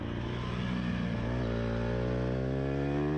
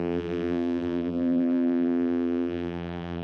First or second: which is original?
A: first